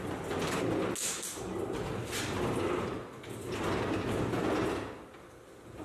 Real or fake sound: real